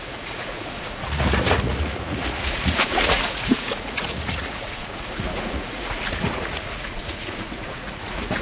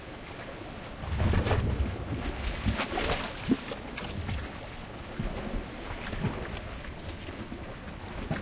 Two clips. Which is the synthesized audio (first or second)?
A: first